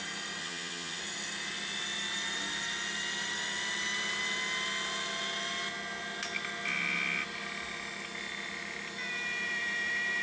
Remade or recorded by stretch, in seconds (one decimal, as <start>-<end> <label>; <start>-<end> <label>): 0.0-0.4 recorded; 0.4-1.0 remade; 1.0-10.2 recorded